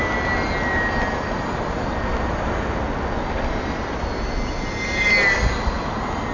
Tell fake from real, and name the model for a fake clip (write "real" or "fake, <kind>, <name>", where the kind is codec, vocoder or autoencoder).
real